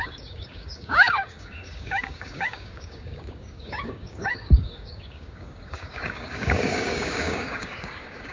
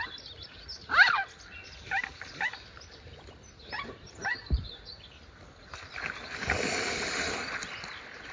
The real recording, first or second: second